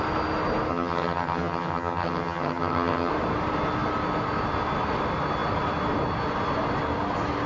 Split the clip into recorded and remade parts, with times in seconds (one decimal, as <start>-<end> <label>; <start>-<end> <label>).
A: 0.0-0.7 recorded; 0.7-3.1 remade; 3.1-7.5 recorded